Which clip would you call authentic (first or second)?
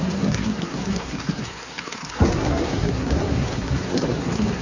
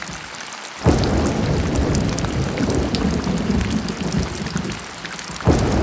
second